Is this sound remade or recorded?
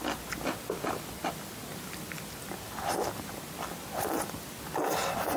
recorded